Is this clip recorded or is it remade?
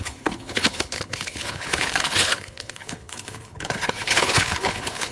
remade